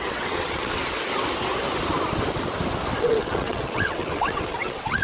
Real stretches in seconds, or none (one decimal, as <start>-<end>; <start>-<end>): 0.8-3.0